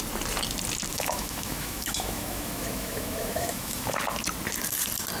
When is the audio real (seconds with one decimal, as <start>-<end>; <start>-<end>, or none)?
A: 0.0-0.9; 4.0-5.2